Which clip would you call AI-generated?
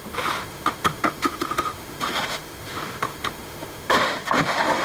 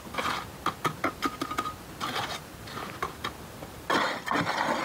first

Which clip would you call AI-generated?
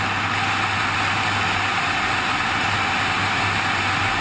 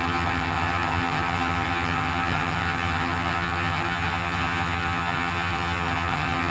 second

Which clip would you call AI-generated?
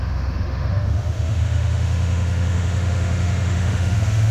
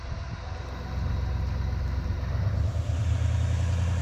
first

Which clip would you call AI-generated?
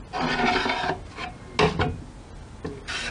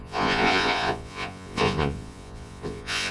second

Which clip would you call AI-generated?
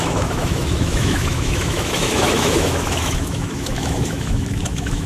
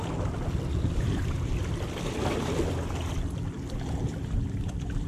first